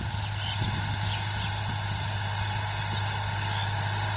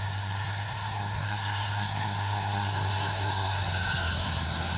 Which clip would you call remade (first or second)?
second